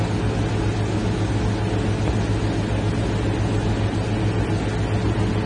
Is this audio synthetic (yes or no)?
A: no